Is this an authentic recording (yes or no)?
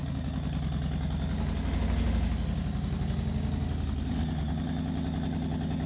yes